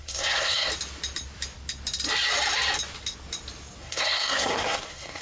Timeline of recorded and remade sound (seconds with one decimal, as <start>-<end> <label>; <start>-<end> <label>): 0.0-0.7 remade; 0.7-3.8 recorded; 3.8-5.2 remade